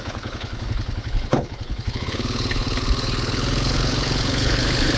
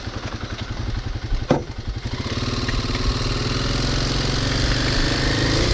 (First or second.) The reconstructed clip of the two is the first